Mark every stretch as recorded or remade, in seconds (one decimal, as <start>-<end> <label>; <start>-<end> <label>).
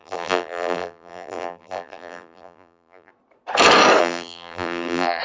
0.0-3.1 remade; 3.1-4.0 recorded; 4.0-5.2 remade